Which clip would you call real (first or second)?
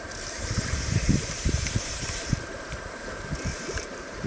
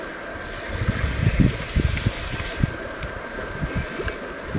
second